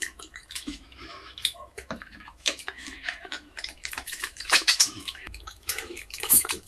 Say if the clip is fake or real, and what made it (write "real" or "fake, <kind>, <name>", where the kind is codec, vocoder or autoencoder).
fake, autoencoder, DAC-VAE